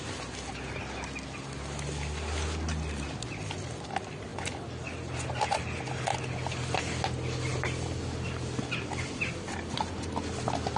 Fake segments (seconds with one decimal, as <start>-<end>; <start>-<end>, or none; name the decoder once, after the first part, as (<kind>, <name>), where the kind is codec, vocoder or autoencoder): none